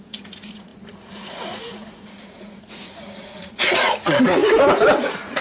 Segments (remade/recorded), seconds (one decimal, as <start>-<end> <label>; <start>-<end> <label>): 0.0-4.4 remade; 4.4-5.0 recorded; 5.0-5.4 remade